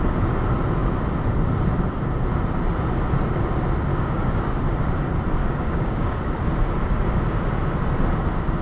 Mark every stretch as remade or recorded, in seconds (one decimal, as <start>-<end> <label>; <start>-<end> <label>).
0.0-3.9 recorded; 3.9-4.6 remade; 4.6-5.4 recorded; 5.4-6.2 remade; 6.2-8.6 recorded